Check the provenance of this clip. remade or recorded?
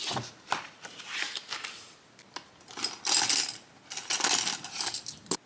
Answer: recorded